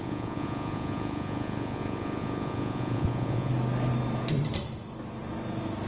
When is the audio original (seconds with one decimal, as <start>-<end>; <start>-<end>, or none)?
3.5-5.9